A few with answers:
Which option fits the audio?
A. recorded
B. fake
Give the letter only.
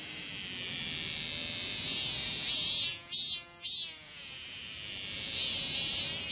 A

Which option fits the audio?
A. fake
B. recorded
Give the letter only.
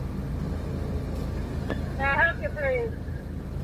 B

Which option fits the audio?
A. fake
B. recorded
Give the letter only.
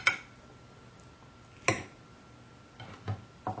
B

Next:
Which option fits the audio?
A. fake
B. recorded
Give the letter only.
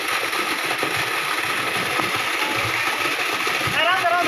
B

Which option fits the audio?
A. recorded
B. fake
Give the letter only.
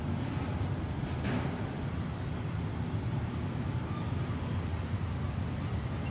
A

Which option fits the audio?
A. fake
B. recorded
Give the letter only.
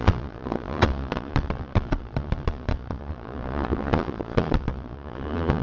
A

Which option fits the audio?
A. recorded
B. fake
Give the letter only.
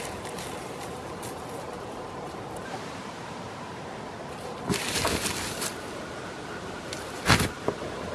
A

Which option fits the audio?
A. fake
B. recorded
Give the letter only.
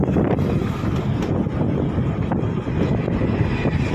B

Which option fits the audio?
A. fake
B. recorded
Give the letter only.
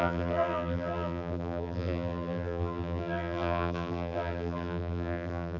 A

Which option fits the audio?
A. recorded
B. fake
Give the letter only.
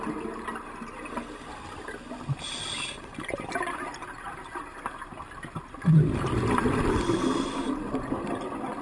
A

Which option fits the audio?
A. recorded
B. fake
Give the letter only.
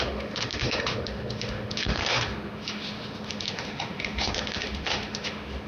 B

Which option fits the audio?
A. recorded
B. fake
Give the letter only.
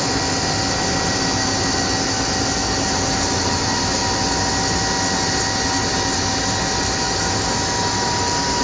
A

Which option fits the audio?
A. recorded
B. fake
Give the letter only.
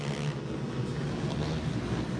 A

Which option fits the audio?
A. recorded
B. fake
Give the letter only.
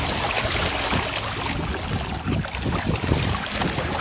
A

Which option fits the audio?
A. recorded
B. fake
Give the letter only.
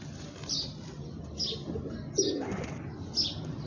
A